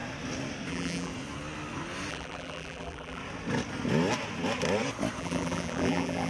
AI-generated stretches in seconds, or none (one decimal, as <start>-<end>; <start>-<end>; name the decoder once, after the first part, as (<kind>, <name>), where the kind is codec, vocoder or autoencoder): 0.7-1.1 (vocoder, BigVGAN v2); 2.1-3.2; 5.2-6.3